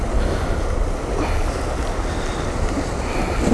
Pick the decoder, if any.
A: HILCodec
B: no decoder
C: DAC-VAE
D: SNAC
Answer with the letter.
B